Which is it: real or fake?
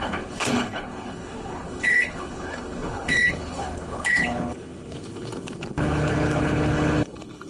fake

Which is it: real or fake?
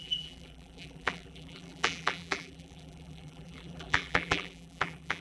fake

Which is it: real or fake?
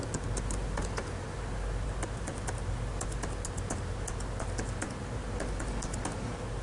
real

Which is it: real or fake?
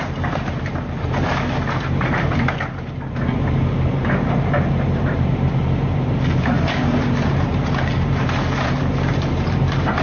fake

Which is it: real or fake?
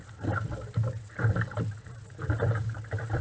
real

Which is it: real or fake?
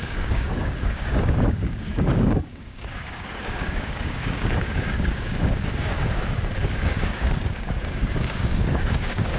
fake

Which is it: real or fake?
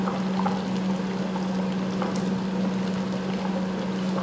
real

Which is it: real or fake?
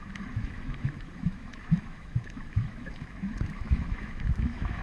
fake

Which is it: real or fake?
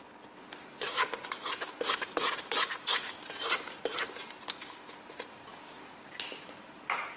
real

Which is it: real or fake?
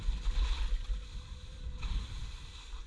real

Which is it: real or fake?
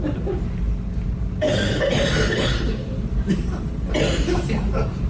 real